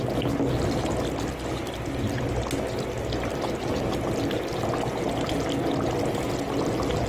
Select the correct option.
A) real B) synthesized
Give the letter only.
A